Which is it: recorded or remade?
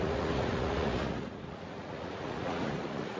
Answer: remade